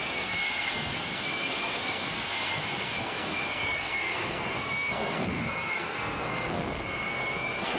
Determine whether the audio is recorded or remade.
remade